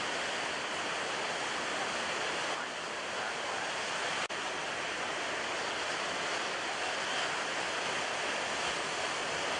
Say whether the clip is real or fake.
real